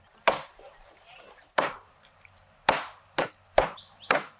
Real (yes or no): no